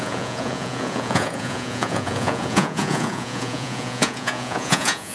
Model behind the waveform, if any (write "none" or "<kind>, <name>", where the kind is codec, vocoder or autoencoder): vocoder, Vocos